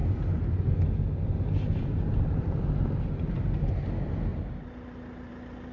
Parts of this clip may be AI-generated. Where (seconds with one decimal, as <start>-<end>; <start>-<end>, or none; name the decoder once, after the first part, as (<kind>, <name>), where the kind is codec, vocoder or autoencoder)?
4.3-5.3 (vocoder, BigVGAN v2)